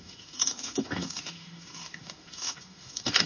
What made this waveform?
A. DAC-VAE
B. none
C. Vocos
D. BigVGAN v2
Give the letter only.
A